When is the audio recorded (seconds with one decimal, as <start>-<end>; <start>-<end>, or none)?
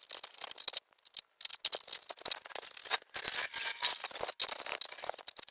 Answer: 0.0-5.5